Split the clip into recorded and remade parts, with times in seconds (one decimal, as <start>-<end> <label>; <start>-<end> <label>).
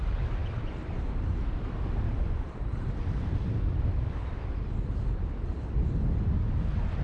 0.0-7.0 recorded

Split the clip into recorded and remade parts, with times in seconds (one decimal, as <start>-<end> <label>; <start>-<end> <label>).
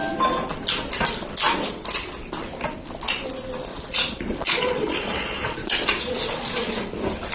0.0-3.7 recorded; 3.7-6.7 remade; 6.7-7.3 recorded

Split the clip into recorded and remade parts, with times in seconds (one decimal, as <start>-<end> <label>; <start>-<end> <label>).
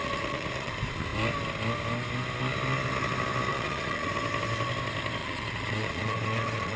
0.0-0.7 remade; 0.7-3.5 recorded; 3.5-4.1 remade; 4.1-5.2 recorded; 5.2-6.8 remade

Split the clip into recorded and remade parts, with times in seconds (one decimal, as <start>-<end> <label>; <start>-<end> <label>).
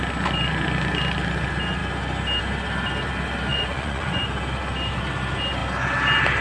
0.0-3.5 recorded; 3.5-4.2 remade; 4.2-6.4 recorded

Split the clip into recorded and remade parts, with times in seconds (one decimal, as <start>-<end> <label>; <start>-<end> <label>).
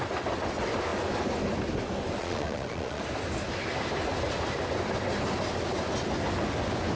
0.0-2.2 recorded; 2.2-3.0 remade; 3.0-7.0 recorded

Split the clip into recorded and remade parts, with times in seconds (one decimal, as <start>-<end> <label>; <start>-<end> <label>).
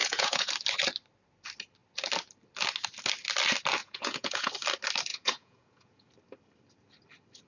0.0-0.5 remade; 0.5-3.8 recorded; 3.8-4.5 remade; 4.5-5.1 recorded; 5.1-6.1 remade; 6.1-7.5 recorded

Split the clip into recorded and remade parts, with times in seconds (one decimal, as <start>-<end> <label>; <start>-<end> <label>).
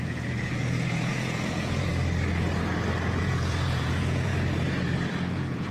0.0-1.9 remade; 1.9-3.2 recorded; 3.2-4.3 remade; 4.3-5.3 recorded; 5.3-5.7 remade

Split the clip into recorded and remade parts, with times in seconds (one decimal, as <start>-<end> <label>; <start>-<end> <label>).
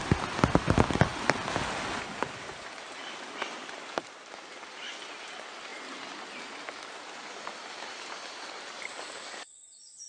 0.0-10.1 recorded